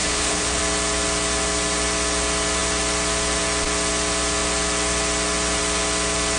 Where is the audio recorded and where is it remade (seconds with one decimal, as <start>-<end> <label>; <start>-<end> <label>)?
0.0-0.6 remade; 0.6-6.4 recorded